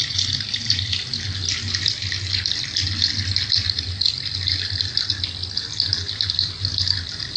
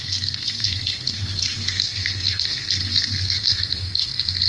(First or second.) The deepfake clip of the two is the second